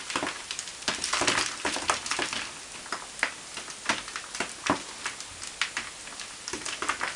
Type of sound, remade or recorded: recorded